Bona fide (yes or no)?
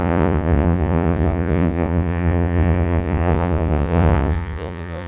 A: no